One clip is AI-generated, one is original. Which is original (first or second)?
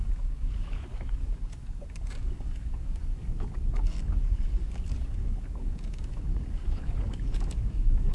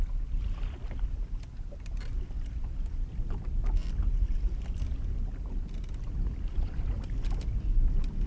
second